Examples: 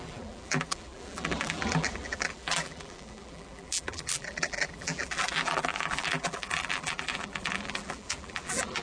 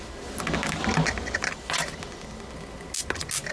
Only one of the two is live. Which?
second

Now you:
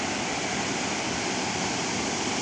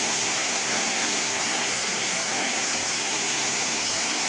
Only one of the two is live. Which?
first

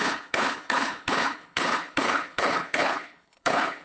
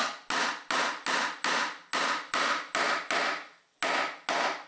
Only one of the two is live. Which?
second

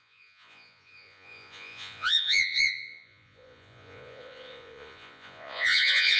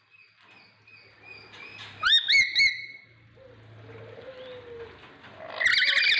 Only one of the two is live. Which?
second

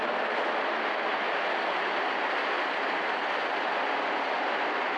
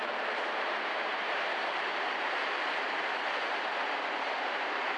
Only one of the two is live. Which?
first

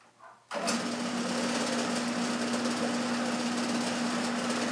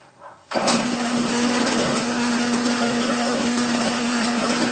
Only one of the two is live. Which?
first